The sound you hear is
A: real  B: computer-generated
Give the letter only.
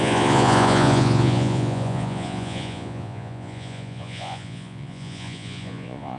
B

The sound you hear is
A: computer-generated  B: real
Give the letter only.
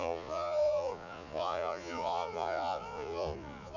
A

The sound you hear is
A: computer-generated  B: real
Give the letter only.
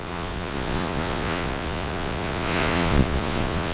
A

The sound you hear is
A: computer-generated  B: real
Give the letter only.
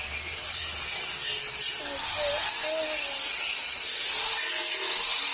B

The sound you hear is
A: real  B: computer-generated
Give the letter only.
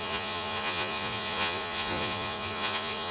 B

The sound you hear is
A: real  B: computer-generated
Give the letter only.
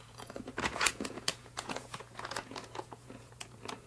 B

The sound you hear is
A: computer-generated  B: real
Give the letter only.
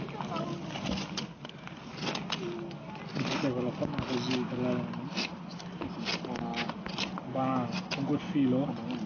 B